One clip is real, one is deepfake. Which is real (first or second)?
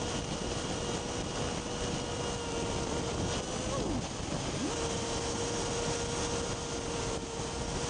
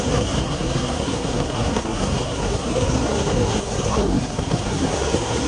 first